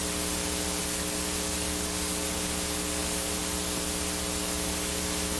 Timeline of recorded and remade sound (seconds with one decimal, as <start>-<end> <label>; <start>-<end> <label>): 0.0-0.8 recorded; 0.8-3.4 remade; 3.4-4.4 recorded; 4.4-5.4 remade